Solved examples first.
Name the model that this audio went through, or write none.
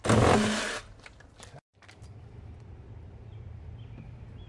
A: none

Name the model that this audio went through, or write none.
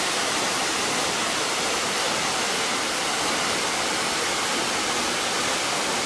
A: none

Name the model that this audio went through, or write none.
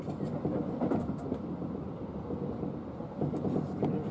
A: none